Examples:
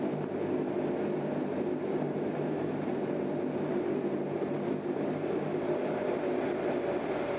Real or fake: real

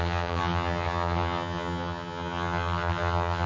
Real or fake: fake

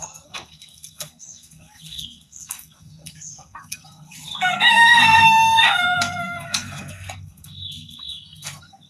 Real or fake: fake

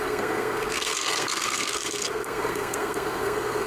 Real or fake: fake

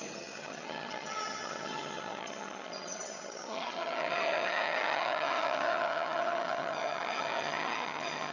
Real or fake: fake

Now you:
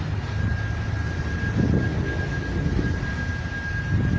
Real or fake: real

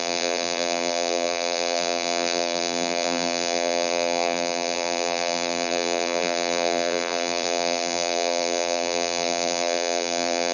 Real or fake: fake